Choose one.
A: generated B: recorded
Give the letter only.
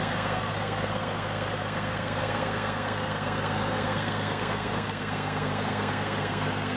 A